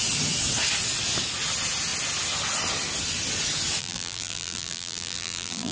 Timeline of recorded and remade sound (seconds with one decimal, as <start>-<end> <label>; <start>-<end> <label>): 0.0-3.8 recorded; 3.8-5.7 remade